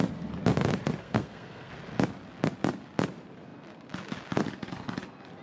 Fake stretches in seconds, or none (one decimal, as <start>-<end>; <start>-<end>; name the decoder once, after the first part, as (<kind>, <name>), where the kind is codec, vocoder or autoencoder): 1.0-1.7 (codec, SNAC)